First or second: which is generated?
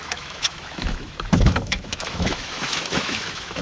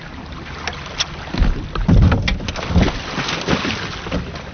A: first